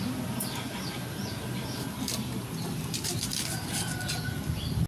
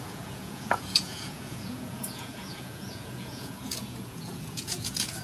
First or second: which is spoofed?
second